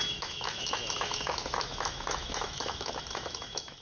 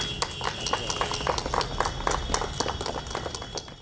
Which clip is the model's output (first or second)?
first